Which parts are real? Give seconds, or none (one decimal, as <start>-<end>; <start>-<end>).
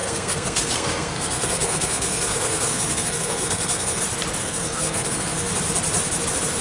4.0-4.4; 5.5-6.6